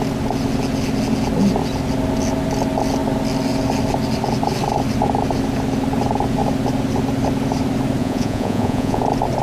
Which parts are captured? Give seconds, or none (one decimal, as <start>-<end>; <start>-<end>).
0.0-8.0; 9.0-9.4